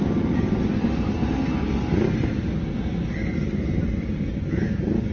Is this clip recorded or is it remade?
recorded